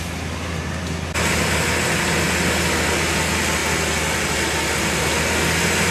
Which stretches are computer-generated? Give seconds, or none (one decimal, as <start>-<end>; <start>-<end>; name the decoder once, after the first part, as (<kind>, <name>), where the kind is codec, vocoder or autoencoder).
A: none